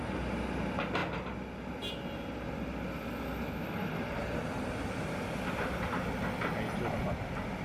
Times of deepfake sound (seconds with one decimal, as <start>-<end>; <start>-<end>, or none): none